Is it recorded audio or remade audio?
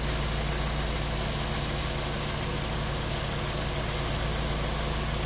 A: recorded